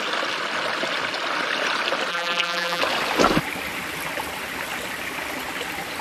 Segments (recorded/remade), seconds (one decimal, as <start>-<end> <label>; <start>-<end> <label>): 0.0-2.1 recorded; 2.1-2.8 remade; 2.8-6.0 recorded